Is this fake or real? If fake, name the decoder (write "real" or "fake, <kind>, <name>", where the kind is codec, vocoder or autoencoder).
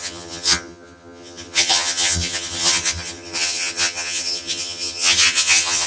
fake, vocoder, HiFi-GAN